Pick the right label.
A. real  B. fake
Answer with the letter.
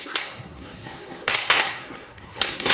B